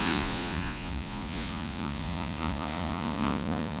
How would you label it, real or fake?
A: fake